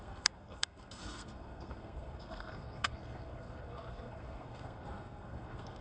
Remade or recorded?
remade